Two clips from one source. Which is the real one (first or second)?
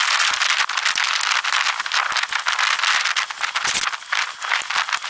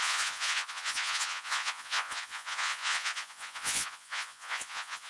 first